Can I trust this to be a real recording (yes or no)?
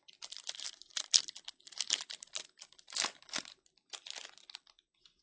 yes